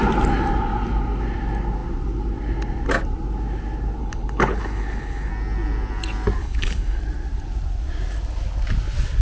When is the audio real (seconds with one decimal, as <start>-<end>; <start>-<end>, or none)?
0.0-4.0; 5.3-6.4; 7.0-9.2